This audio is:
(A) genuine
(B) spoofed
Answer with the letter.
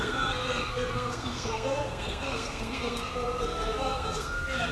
B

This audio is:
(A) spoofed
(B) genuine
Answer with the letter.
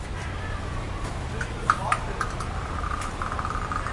A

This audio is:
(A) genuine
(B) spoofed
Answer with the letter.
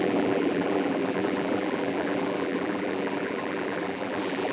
B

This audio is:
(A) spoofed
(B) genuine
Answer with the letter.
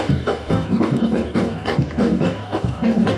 A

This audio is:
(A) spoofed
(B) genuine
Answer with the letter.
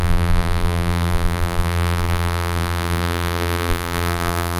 A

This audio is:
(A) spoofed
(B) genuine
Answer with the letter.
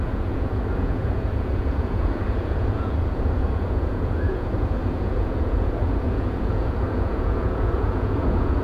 A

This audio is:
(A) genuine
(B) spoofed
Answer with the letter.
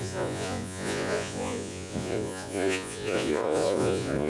B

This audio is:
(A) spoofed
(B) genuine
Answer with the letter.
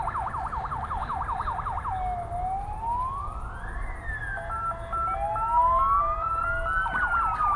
B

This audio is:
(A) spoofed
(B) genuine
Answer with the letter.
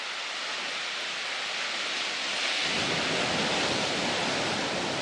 B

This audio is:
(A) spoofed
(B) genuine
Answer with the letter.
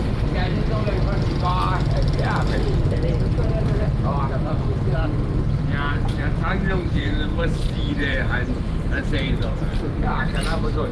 A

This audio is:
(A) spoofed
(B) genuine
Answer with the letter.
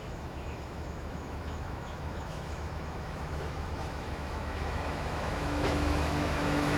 A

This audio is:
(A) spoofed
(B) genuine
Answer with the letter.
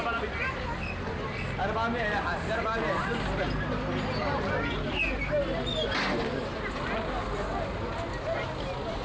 B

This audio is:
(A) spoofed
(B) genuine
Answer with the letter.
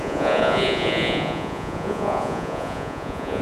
A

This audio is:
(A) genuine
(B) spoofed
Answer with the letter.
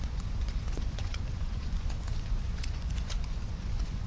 B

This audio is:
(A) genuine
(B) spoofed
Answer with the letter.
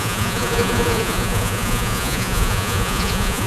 B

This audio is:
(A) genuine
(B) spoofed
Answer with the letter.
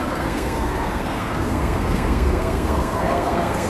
B